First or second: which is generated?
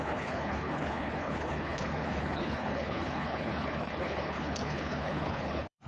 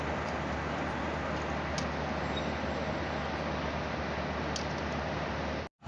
first